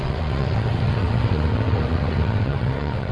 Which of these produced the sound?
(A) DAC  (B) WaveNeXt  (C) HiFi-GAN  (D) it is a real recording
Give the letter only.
B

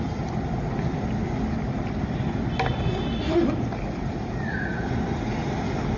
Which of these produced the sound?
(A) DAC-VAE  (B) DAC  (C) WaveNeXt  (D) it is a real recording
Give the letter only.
D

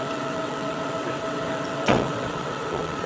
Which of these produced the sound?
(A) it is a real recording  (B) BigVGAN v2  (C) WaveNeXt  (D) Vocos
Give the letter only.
C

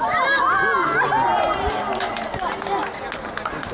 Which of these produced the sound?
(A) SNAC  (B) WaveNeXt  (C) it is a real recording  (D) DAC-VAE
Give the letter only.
C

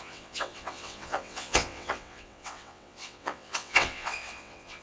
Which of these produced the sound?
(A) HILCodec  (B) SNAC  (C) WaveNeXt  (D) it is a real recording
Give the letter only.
C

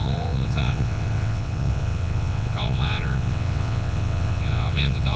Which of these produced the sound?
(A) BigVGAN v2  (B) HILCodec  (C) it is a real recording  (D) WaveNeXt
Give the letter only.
D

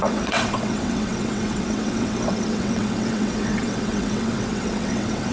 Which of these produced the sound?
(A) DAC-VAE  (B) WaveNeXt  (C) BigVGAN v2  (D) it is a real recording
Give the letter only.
B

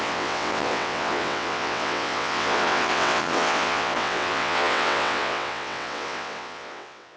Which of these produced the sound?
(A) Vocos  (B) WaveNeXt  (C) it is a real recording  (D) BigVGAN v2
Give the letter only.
B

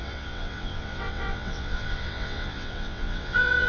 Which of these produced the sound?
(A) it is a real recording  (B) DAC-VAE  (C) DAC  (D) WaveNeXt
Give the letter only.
D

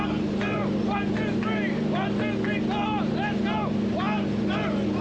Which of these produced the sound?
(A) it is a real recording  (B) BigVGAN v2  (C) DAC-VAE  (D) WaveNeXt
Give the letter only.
A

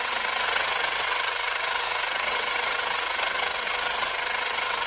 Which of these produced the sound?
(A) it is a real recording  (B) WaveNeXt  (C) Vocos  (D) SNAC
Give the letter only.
B